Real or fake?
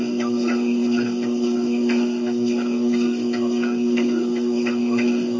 fake